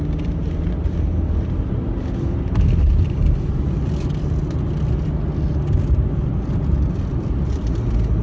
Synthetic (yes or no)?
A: no